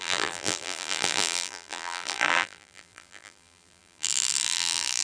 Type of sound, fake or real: fake